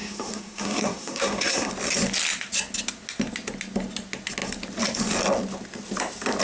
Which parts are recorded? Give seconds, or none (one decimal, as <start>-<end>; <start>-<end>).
1.7-6.4

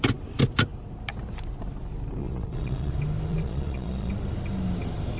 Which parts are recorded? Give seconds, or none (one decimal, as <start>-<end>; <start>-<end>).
0.0-2.2; 2.9-3.3; 4.1-5.2

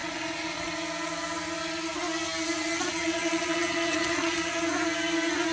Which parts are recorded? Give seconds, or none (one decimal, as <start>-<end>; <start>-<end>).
0.7-2.7; 4.6-5.5

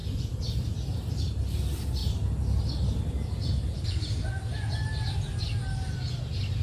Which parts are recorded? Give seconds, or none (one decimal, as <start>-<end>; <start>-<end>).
0.0-6.6

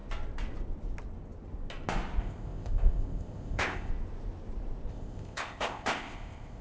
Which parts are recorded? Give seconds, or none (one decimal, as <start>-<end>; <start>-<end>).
0.0-2.2; 3.9-4.9

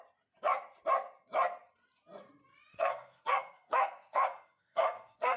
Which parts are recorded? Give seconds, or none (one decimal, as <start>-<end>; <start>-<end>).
0.0-2.7